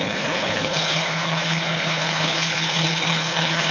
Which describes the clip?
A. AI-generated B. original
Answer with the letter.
A